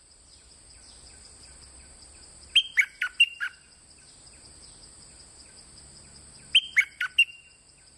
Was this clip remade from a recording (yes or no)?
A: no